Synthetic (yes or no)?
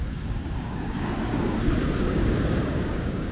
yes